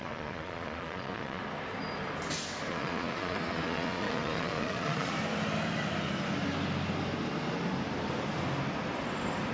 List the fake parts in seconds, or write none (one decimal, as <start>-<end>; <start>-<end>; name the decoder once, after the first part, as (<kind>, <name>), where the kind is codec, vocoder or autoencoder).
0.0-1.4 (vocoder, Vocos); 2.7-5.1